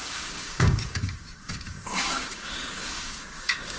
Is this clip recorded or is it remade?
remade